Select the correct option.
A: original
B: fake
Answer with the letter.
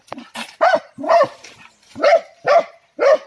A